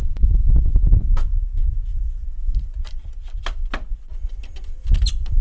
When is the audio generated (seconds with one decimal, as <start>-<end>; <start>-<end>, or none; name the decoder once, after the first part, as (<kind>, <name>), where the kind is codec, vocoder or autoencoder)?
0.0-0.8 (autoencoder, DAC-VAE)